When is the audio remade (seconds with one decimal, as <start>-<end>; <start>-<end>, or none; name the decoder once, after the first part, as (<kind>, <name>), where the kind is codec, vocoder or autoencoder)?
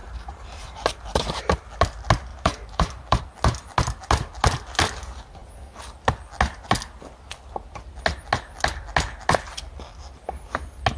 0.0-1.4 (vocoder, BigVGAN v2); 2.3-3.2